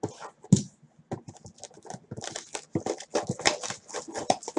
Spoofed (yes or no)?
no